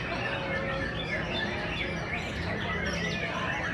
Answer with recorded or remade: recorded